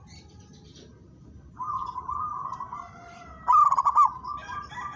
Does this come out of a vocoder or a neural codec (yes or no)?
no